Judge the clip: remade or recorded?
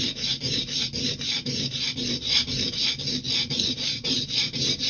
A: recorded